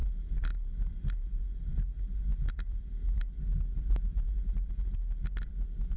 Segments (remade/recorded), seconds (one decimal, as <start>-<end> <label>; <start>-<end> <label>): 0.0-3.2 remade; 3.2-4.1 recorded; 4.1-5.2 remade; 5.2-6.0 recorded

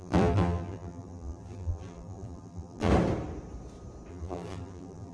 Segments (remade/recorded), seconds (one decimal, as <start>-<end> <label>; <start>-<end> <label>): 0.0-2.9 remade; 2.9-4.1 recorded; 4.1-5.1 remade

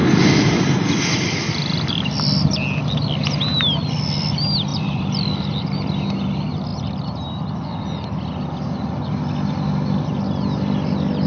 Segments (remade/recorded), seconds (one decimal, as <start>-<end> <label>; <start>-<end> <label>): 0.0-4.7 recorded; 4.7-5.3 remade; 5.3-11.3 recorded

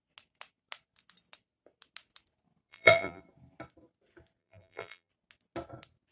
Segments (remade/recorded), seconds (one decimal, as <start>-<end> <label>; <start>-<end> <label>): 0.0-2.7 recorded; 2.7-3.2 remade; 3.2-4.4 recorded; 4.4-5.1 remade; 5.1-6.1 recorded

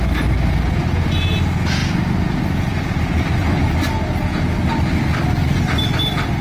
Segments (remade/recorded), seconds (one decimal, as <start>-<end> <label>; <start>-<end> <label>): 0.0-6.4 recorded

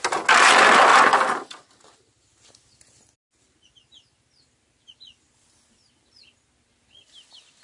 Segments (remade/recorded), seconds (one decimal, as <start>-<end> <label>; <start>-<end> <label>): 0.0-7.6 recorded

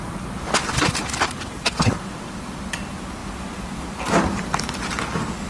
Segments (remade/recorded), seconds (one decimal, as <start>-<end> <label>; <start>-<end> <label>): 0.0-0.6 recorded; 0.6-2.6 remade; 2.6-3.2 recorded; 3.2-5.5 remade